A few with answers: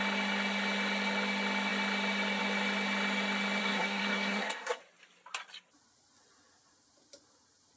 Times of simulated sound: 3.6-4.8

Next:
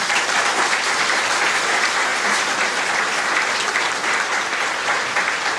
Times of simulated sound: none

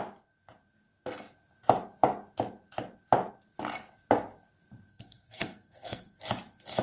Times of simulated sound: 4.9-6.2

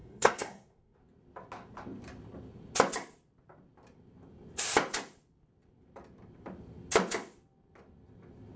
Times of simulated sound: 0.0-1.0